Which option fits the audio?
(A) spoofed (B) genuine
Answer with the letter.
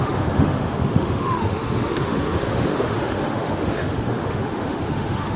A